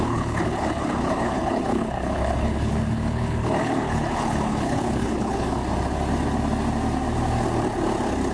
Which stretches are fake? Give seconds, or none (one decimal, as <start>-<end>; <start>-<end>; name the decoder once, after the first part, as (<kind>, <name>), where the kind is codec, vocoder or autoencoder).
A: 0.0-5.6 (codec, HILCodec)